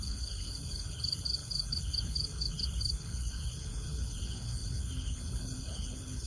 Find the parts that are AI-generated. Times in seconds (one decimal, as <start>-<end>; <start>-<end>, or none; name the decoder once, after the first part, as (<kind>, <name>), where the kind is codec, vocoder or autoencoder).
0.0-6.3 (codec, HILCodec)